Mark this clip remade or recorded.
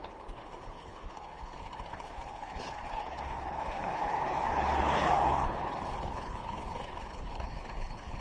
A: remade